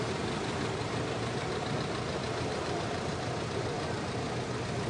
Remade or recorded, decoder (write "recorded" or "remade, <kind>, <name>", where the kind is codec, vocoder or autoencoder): recorded